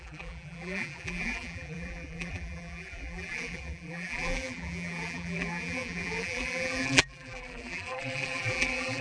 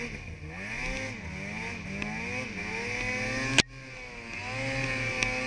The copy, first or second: first